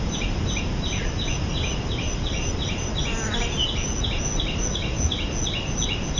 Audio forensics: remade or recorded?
recorded